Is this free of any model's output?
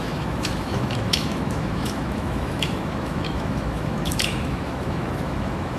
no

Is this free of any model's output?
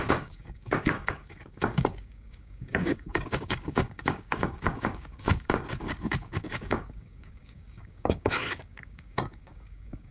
no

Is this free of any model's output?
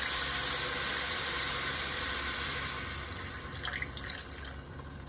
no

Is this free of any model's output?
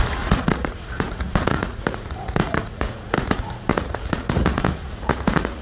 no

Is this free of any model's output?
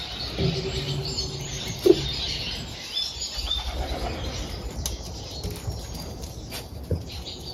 yes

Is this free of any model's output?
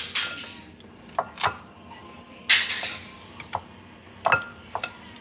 yes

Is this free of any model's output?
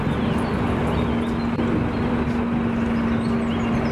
yes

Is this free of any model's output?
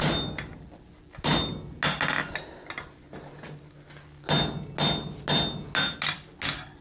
yes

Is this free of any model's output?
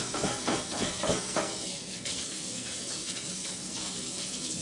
no